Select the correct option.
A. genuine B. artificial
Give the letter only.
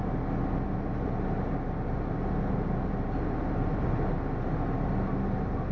A